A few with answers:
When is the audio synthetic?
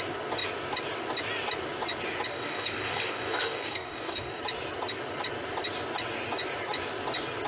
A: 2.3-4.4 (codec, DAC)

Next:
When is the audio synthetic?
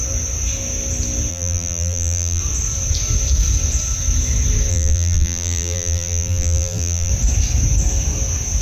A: 1.3-2.4 (vocoder, BigVGAN v2); 4.7-7.1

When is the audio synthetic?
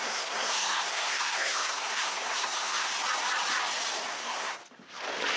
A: 0.0-2.9 (codec, SNAC); 4.1-4.6